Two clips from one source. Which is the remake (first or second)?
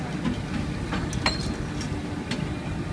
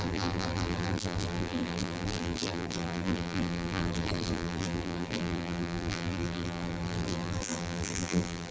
second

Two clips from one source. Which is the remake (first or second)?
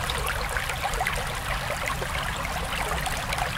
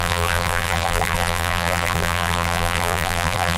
second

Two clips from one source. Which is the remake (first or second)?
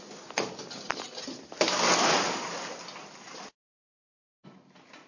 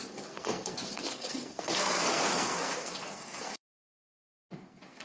second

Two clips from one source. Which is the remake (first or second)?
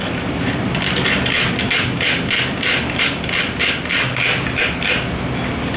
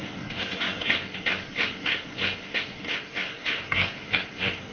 second